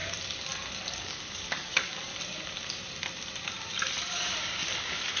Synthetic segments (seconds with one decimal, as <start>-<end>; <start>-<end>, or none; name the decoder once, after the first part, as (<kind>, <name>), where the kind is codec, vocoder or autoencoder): 1.0-2.1 (codec, DAC); 4.4-5.2